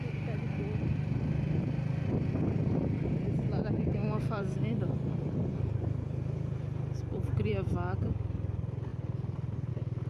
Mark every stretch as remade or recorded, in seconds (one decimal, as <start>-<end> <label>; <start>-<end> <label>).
0.0-4.0 recorded; 4.0-8.0 remade; 8.0-8.9 recorded; 8.9-9.7 remade; 9.7-10.1 recorded